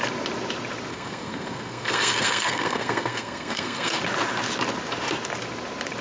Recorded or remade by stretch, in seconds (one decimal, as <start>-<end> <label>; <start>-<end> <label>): 0.0-0.9 recorded; 0.9-4.0 remade; 4.0-6.0 recorded